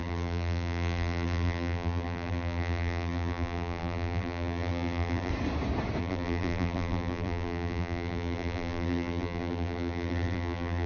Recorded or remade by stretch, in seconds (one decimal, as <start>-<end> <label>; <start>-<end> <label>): 0.0-5.3 remade; 5.3-6.0 recorded; 6.0-10.9 remade